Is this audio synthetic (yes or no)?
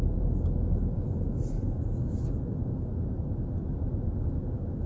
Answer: no